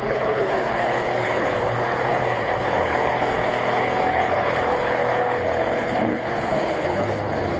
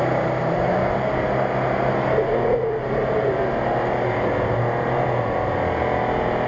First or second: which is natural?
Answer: second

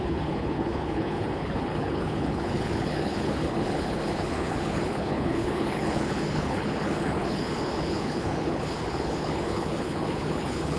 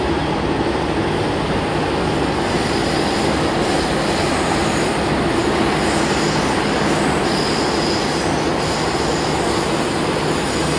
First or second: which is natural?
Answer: second